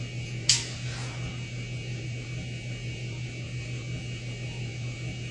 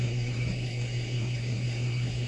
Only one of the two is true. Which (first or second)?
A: first